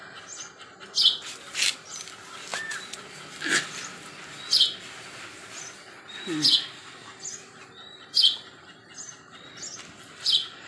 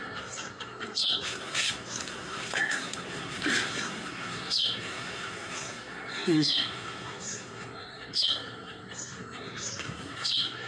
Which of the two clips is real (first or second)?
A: first